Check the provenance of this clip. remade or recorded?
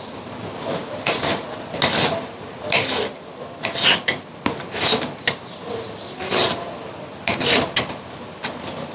recorded